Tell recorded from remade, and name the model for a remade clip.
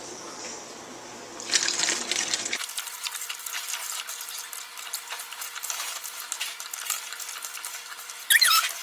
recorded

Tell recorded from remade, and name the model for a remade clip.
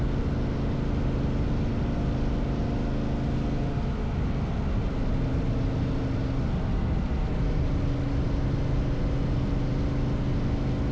recorded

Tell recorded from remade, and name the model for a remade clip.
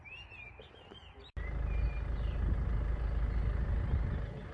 recorded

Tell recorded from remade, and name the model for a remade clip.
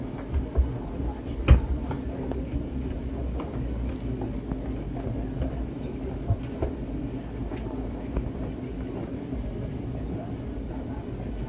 recorded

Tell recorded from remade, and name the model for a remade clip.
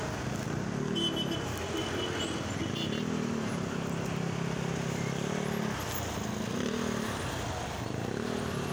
recorded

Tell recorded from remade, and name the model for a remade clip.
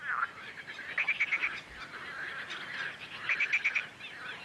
recorded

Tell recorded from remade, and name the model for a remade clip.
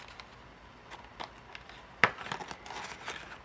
recorded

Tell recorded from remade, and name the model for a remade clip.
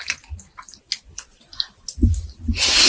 remade, vocoder, BigVGAN v2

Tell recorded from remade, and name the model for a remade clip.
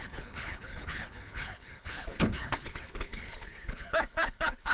remade, codec, HILCodec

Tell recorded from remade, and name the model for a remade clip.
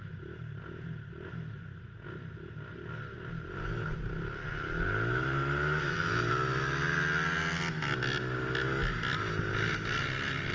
recorded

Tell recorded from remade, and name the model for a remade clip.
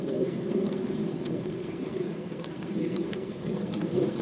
remade, codec, SNAC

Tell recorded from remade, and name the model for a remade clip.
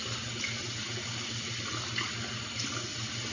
recorded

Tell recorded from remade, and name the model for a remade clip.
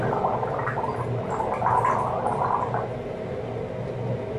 recorded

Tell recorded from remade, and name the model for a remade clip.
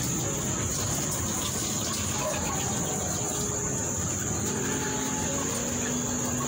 recorded